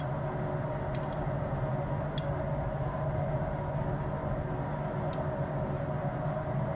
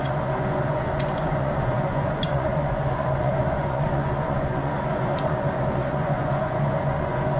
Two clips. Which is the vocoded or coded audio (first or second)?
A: second